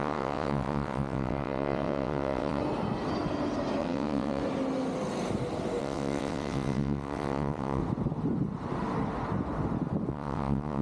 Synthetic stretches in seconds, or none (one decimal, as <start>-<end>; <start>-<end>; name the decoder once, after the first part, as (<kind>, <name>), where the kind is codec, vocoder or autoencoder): 0.0-2.6 (vocoder, WaveNeXt); 3.8-4.4; 5.8-7.8; 10.1-10.8